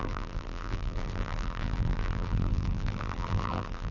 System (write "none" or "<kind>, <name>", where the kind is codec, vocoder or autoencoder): vocoder, BigVGAN v2